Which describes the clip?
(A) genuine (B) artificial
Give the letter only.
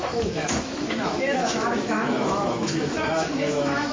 B